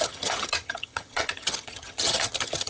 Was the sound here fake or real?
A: fake